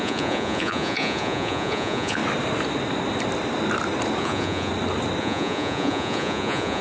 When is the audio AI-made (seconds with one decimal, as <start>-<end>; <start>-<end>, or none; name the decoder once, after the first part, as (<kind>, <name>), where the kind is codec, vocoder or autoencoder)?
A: 0.0-2.2 (vocoder, Vocos); 4.2-4.7; 5.2-6.8